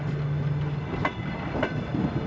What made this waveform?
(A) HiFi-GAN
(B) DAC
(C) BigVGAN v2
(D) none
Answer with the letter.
D